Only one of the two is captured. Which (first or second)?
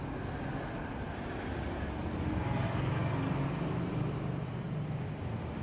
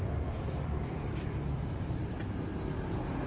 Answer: first